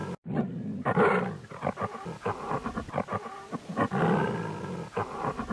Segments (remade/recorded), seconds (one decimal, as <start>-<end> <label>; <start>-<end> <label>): 0.0-5.5 recorded